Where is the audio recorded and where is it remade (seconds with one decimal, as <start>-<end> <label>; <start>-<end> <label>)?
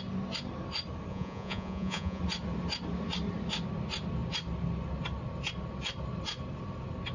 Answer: 0.0-1.1 recorded; 1.1-2.2 remade; 2.2-7.1 recorded